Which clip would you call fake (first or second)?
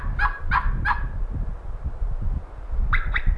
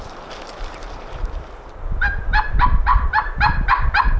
second